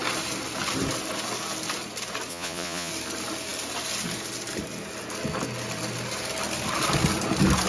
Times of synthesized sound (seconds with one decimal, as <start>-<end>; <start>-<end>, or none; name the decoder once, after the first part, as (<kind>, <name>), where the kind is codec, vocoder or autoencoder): 2.3-2.9 (vocoder, Vocos)